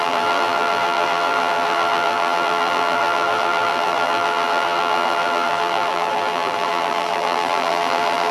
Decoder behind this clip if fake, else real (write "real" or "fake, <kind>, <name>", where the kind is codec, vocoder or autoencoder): fake, vocoder, BigVGAN v2